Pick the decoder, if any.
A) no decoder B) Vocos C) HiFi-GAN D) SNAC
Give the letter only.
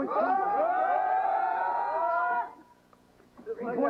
B